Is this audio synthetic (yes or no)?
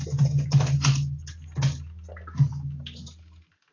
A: no